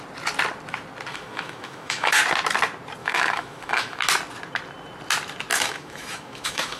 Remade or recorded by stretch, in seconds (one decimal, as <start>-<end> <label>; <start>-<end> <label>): 0.0-1.1 recorded; 1.1-2.2 remade; 2.2-3.0 recorded; 3.0-4.0 remade; 4.0-5.5 recorded; 5.5-6.8 remade